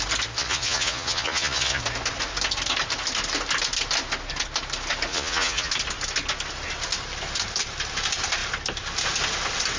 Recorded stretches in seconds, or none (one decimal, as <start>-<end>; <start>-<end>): 0.0-0.4; 1.8-5.1; 5.7-9.8